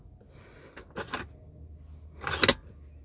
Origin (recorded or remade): recorded